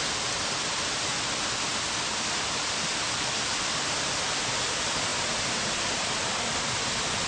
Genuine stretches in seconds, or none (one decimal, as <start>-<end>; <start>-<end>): 0.0-1.7; 4.4-5.1; 5.8-7.3